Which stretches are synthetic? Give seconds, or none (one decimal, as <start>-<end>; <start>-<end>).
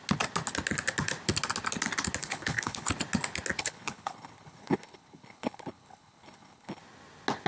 2.2-2.9; 3.6-6.8